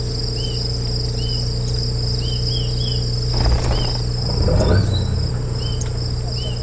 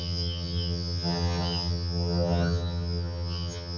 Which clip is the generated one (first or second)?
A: second